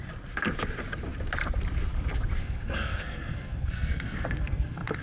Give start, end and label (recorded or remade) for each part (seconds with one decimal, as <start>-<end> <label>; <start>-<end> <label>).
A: 0.0-2.4 recorded; 2.4-5.0 remade

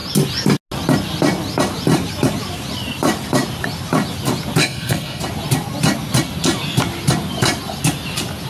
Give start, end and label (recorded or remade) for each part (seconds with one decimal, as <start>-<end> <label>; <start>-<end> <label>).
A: 0.0-4.6 recorded; 4.6-5.2 remade; 5.2-8.5 recorded

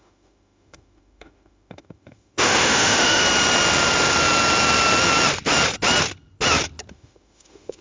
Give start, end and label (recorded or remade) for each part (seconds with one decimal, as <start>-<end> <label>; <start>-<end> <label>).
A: 0.0-3.2 remade; 3.2-6.9 recorded; 6.9-7.8 remade